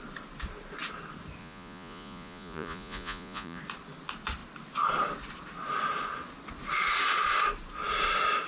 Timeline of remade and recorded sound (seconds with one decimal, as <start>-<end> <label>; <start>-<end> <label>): 0.0-1.4 recorded; 1.4-3.6 remade; 3.6-8.5 recorded